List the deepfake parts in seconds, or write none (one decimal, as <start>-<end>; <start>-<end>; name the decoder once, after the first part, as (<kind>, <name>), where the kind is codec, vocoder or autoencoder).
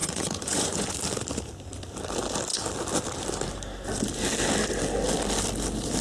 0.0-0.9 (vocoder, Vocos)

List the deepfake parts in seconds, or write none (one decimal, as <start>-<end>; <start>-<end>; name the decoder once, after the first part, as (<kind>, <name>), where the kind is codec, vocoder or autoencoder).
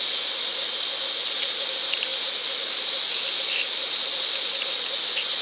none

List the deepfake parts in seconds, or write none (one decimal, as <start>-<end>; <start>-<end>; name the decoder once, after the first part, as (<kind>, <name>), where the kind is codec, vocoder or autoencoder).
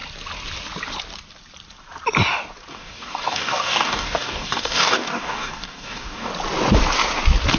2.7-6.3 (codec, DAC)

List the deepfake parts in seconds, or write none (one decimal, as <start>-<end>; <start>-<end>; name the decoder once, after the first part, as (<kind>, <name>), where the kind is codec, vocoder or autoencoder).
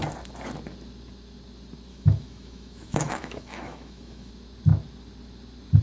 1.9-4.3 (autoencoder, DAC-VAE)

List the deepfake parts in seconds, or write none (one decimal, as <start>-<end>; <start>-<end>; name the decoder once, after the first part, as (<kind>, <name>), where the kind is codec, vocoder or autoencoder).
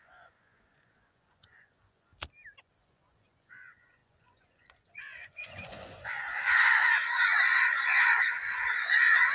0.0-2.1 (vocoder, Vocos); 2.6-9.3